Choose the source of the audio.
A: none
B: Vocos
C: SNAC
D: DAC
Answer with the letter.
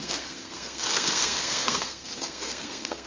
C